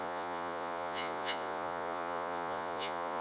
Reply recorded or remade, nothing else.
remade